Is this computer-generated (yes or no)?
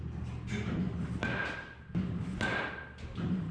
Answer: no